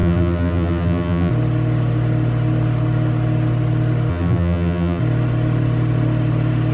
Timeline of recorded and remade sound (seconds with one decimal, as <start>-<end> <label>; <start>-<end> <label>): 0.0-1.3 remade; 1.3-4.1 recorded; 4.1-5.0 remade; 5.0-6.7 recorded